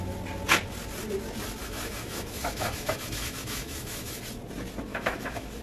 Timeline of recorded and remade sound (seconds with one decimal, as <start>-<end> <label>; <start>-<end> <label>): 0.0-1.6 recorded; 1.6-4.2 remade; 4.2-4.9 recorded; 4.9-5.6 remade